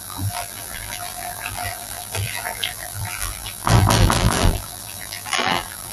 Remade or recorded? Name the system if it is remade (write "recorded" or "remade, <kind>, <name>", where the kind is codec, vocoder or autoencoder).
remade, vocoder, BigVGAN v2